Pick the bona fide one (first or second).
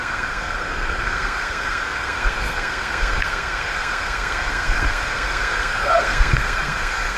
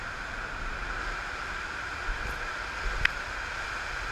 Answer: second